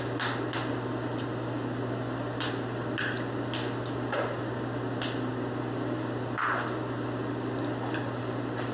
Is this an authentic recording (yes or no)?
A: yes